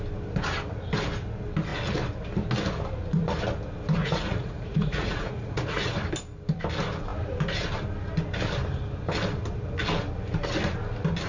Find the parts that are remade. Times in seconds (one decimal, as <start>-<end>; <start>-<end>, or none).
4.0-5.8